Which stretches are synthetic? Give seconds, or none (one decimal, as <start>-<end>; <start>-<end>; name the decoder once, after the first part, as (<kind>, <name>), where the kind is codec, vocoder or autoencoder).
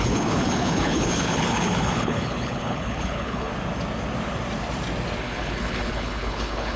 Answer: 0.0-3.5 (codec, HILCodec); 5.2-6.8